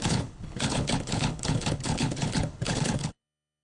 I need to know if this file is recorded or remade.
remade